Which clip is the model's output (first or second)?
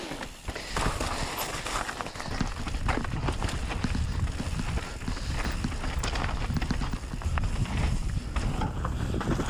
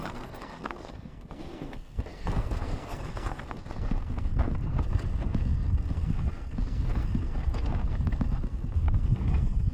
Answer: second